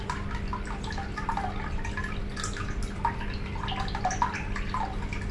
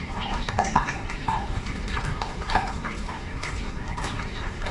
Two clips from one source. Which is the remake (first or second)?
second